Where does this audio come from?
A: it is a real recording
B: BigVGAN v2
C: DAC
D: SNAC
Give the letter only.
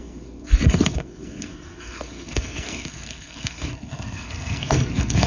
D